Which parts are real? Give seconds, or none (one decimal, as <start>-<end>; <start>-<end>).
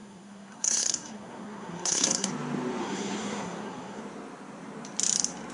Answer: 2.3-2.8; 4.0-5.5